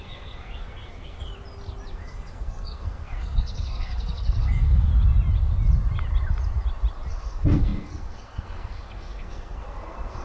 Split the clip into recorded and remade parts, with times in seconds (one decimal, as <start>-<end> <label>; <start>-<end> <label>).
0.0-1.3 remade; 1.3-1.9 recorded; 1.9-4.9 remade; 4.9-7.1 recorded; 7.1-10.2 remade